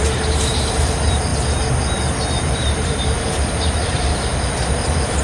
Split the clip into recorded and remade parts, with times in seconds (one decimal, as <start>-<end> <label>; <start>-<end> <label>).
0.0-1.3 remade; 1.3-2.3 recorded; 2.3-5.2 remade